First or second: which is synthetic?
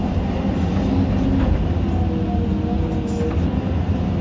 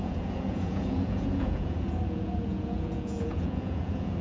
second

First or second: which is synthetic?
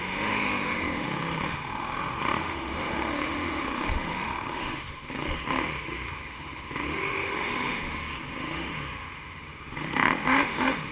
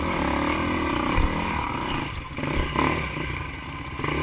first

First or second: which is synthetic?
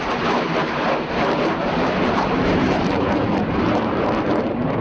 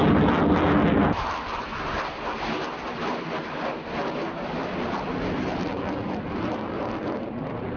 first